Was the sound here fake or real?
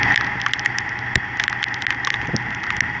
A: real